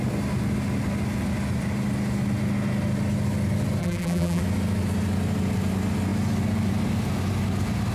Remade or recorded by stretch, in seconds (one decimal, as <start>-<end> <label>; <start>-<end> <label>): 0.0-3.8 recorded; 3.8-4.4 remade; 4.4-7.9 recorded